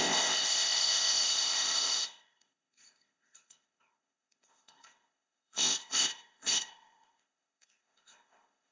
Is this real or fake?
fake